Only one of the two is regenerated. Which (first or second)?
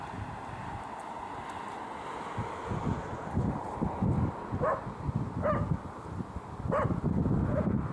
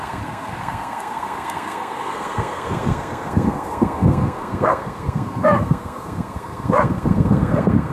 second